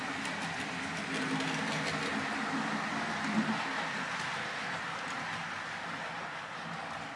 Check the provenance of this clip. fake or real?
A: real